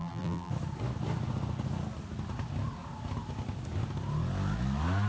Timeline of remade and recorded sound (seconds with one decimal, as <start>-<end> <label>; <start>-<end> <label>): 0.0-0.5 remade; 0.5-5.1 recorded